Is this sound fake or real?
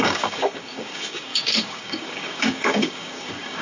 fake